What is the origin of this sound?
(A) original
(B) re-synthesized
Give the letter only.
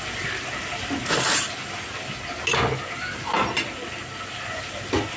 A